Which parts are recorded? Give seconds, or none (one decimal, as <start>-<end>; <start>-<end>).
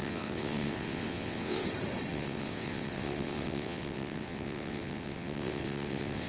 1.6-2.1